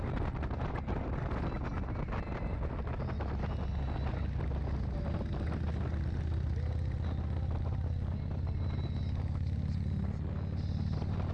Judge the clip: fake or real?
real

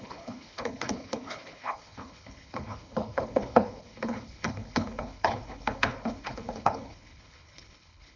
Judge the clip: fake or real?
fake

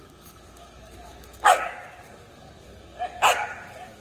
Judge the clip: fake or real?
fake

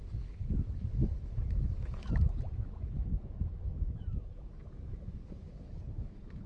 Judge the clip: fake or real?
fake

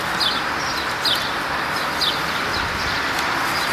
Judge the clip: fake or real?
real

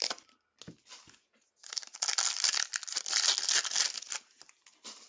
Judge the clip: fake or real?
real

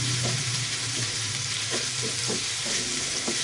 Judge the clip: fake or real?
real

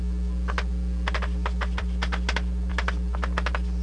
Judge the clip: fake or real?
real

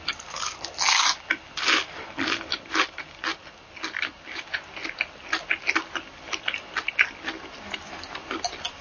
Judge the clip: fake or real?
real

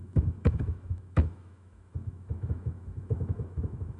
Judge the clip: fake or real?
fake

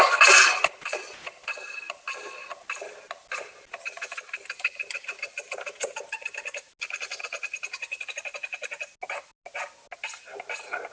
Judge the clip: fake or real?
real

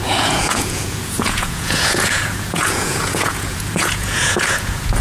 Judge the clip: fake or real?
fake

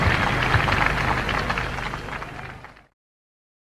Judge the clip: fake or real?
real